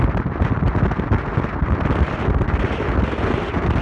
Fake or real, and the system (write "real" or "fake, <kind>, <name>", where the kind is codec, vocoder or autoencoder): real